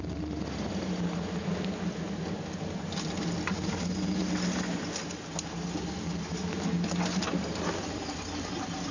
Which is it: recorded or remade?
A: recorded